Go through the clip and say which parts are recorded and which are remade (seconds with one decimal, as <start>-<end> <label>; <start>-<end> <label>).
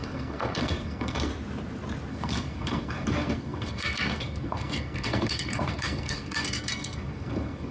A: 0.0-1.3 remade; 1.3-2.1 recorded; 2.1-7.7 remade